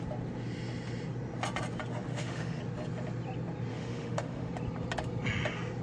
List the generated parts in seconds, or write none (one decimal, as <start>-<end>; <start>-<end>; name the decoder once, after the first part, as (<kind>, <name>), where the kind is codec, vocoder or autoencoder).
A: 2.1-2.6 (autoencoder, DAC-VAE); 3.7-4.5